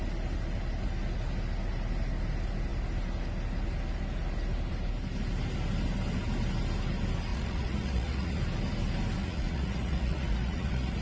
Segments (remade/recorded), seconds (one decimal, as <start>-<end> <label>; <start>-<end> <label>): 0.0-7.3 recorded; 7.3-8.4 remade; 8.4-9.2 recorded; 9.2-11.0 remade